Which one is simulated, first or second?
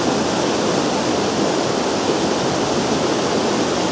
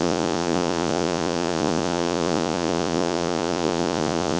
second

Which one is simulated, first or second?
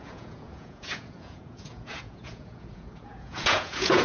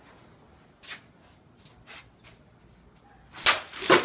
first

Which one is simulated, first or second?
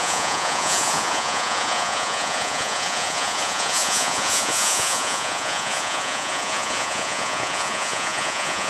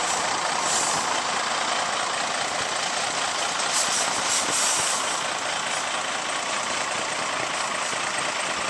first